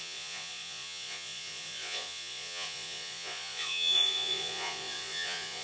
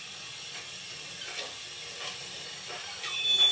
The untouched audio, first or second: second